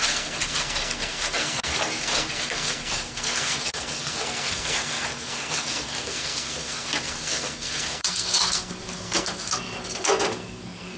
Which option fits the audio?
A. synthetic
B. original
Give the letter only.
A